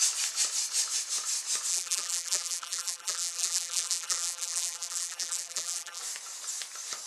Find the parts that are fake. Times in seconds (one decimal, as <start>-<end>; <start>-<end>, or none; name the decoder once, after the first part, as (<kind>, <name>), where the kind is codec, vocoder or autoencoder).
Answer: 1.7-6.0 (vocoder, BigVGAN v2)